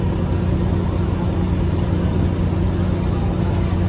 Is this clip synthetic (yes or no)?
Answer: no